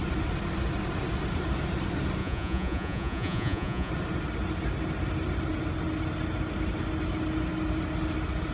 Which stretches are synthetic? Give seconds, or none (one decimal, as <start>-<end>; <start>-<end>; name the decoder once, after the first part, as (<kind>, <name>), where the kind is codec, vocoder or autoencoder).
2.2-3.9 (vocoder, Vocos)